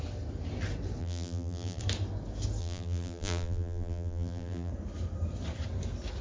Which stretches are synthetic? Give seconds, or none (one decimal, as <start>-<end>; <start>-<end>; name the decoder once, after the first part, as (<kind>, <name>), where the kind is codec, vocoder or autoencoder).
1.0-1.8 (vocoder, BigVGAN v2); 2.6-4.7